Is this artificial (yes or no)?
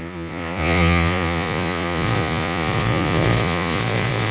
yes